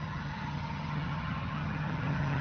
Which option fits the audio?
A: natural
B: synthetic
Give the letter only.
B